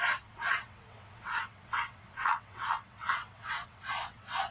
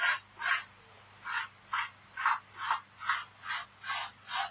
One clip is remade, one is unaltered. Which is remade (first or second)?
first